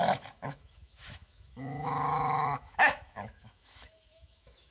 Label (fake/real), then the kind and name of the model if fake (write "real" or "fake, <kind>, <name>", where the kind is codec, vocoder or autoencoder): fake, autoencoder, DAC-VAE